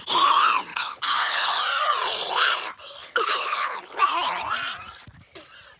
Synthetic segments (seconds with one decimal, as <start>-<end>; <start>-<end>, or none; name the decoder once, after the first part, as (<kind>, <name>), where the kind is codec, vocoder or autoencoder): 0.7-1.6 (codec, HILCodec); 3.0-4.0